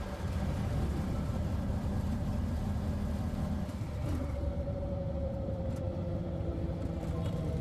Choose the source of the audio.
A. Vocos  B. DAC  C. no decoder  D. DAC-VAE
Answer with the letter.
C